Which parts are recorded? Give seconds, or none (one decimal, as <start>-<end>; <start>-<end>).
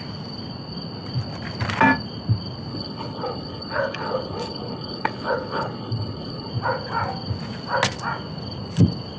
0.0-2.7; 6.5-9.2